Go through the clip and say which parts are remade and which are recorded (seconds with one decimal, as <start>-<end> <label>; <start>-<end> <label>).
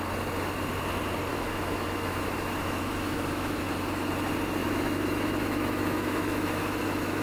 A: 0.0-1.3 recorded; 1.3-3.6 remade; 3.6-4.6 recorded; 4.6-7.2 remade